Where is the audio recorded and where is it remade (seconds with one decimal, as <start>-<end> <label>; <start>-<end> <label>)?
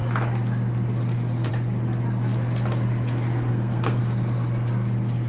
0.0-3.5 recorded; 3.5-4.0 remade; 4.0-5.3 recorded